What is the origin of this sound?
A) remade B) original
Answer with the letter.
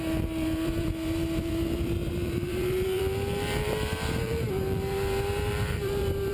A